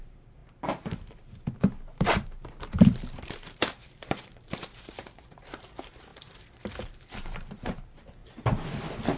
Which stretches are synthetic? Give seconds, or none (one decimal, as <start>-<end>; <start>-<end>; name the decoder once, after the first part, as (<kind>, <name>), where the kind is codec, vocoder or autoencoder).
0.0-8.2 (vocoder, BigVGAN v2)